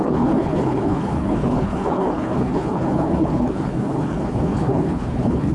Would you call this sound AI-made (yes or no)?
yes